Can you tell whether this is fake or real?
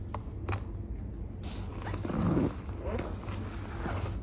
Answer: real